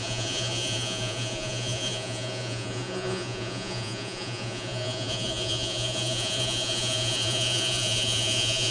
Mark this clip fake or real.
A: fake